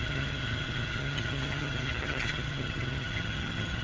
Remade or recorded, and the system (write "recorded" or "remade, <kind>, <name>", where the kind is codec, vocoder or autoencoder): remade, vocoder, HiFi-GAN